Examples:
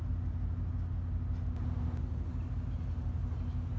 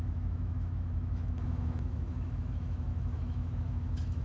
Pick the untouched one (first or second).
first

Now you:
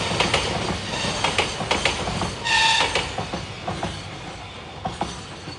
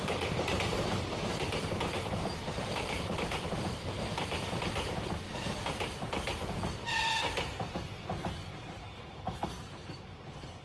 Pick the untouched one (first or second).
first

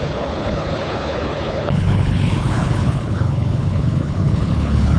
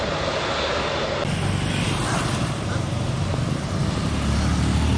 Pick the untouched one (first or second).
second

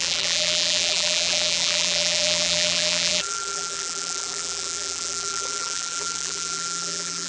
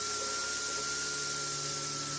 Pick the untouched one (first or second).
second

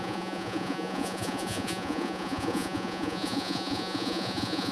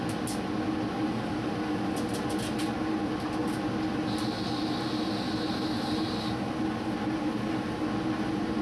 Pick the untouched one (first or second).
second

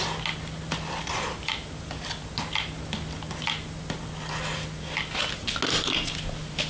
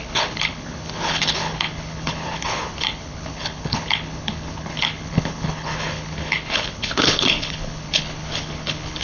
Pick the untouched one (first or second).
first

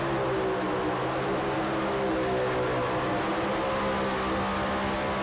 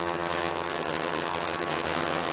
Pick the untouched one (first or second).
first